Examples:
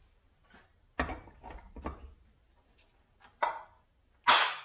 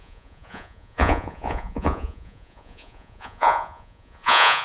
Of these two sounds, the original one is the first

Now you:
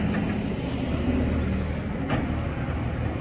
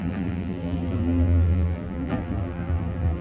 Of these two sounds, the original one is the first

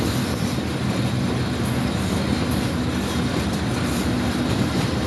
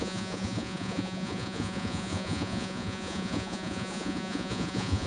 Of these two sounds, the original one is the first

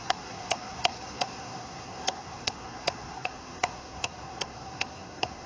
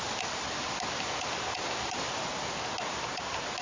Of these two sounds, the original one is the second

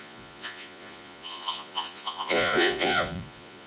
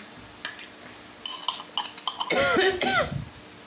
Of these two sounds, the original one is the second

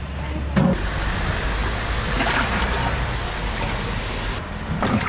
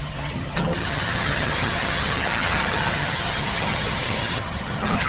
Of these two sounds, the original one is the first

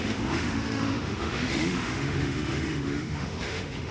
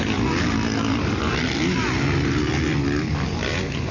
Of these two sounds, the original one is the second